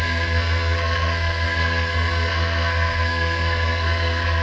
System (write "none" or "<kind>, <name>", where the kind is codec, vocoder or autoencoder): codec, SNAC